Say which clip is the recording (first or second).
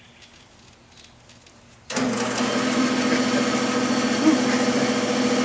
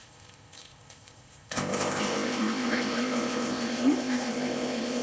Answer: first